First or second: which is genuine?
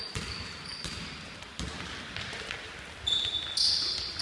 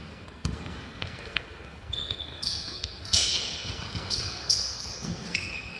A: first